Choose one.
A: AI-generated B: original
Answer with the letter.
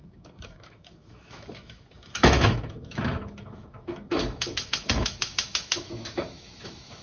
A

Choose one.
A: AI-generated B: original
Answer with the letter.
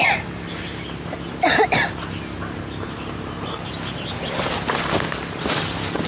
B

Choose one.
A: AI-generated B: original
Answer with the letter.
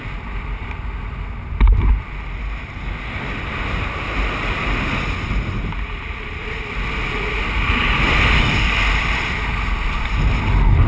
B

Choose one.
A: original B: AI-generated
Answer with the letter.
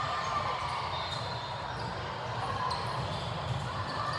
A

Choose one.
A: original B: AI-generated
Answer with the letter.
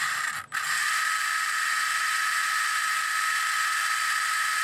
A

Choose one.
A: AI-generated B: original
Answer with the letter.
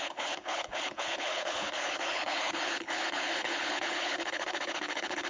A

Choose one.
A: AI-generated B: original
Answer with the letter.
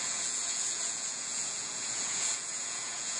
A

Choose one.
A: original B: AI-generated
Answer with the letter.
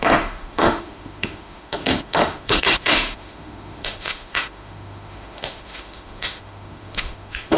B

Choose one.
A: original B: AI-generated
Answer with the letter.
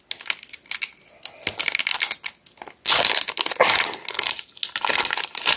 A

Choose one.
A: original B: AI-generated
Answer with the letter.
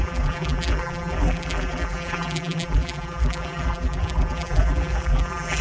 B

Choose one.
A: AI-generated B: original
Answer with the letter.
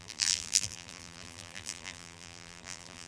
A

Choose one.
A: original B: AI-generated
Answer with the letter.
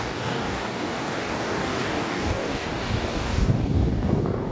B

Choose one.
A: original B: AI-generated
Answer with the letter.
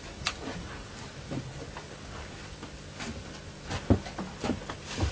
A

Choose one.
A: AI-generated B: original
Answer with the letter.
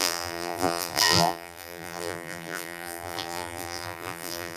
A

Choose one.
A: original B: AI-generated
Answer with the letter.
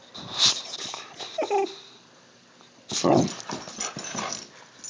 A